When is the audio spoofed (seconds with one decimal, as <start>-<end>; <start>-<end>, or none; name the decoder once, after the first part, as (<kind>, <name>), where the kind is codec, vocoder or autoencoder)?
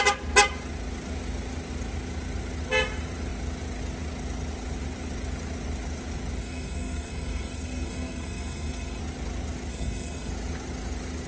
6.4-9.0 (codec, SNAC); 9.7-10.3